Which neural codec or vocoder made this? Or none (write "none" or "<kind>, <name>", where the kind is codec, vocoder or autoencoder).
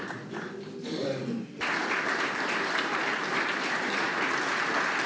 none